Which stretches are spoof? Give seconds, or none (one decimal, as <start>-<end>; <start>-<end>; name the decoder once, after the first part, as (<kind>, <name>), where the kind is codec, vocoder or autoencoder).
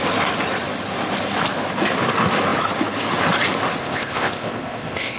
3.8-5.2 (codec, ZipCodec)